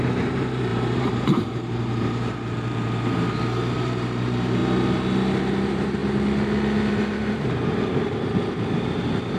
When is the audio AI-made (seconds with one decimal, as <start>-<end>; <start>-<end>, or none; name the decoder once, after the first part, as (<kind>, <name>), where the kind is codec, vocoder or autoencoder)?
0.0-4.6 (vocoder, BigVGAN v2); 5.4-6.0; 6.9-9.4

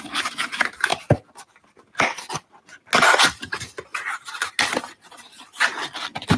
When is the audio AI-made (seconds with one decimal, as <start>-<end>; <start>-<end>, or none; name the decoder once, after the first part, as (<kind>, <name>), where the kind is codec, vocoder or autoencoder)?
0.9-1.7 (vocoder, BigVGAN v2)

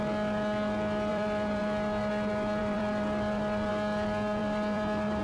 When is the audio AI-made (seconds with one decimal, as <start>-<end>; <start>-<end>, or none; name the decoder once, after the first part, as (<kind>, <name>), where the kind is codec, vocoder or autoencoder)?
1.1-1.6 (vocoder, BigVGAN v2); 2.6-3.7; 4.4-5.2

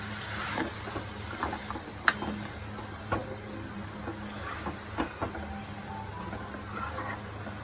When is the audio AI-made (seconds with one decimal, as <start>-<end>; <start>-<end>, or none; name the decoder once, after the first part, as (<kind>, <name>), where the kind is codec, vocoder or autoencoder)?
none

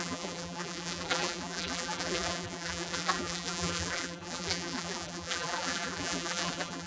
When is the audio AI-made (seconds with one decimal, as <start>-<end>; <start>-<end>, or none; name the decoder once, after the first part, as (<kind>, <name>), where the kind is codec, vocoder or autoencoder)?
0.0-6.9 (vocoder, BigVGAN v2)

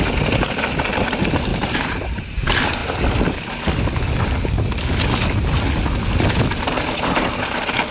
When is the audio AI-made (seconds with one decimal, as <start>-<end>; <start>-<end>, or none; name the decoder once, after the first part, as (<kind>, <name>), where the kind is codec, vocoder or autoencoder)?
1.5-2.2 (vocoder, BigVGAN v2)